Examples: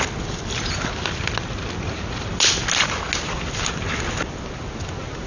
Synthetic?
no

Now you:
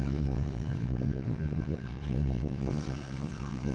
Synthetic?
yes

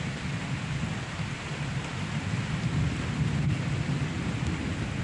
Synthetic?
no